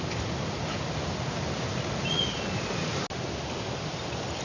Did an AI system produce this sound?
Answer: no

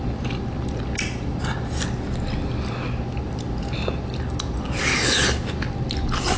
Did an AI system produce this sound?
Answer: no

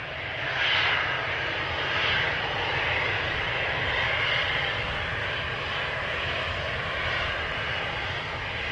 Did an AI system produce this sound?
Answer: no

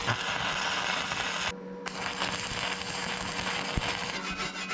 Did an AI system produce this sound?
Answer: no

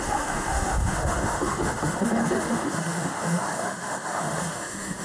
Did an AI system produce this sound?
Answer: yes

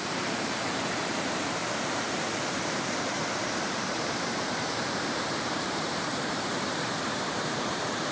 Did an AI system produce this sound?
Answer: yes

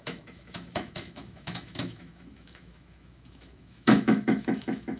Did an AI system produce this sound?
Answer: yes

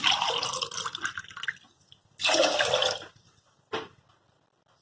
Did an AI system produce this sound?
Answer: no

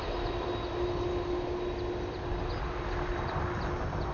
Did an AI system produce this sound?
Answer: no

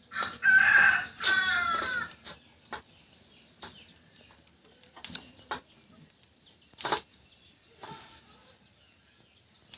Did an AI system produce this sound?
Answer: no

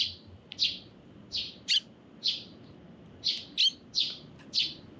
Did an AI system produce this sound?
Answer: no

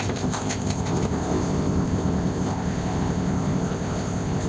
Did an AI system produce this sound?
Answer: yes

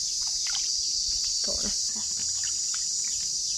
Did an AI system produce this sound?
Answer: no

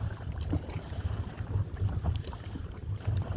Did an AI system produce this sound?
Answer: yes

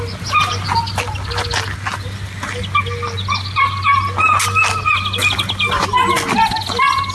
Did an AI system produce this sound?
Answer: no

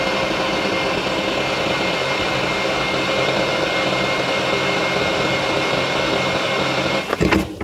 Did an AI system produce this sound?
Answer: no